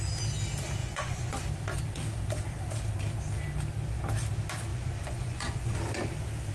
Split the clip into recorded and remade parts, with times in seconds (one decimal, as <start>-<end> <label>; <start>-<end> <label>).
0.0-0.8 recorded; 0.8-1.4 remade; 1.4-4.7 recorded; 4.7-5.8 remade; 5.8-6.5 recorded